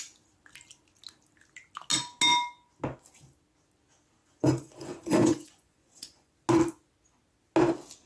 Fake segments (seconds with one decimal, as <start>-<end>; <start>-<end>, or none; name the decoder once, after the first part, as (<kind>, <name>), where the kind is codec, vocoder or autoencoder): 4.2-6.3 (vocoder, Vocos)